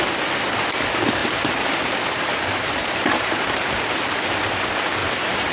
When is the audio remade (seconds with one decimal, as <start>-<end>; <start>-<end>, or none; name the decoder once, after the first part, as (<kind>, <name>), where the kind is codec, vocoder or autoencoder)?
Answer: 1.2-3.8 (vocoder, BigVGAN v2); 5.0-5.5